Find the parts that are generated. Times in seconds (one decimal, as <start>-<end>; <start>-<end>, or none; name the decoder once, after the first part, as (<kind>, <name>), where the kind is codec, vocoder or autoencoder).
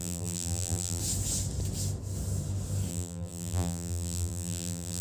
0.0-1.0 (vocoder, BigVGAN v2); 2.9-5.0